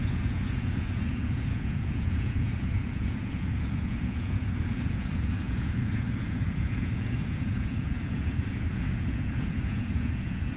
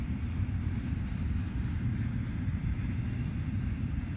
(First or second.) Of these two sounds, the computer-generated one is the first